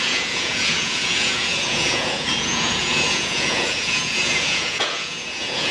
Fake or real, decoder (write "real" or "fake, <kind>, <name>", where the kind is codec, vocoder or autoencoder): fake, vocoder, Vocos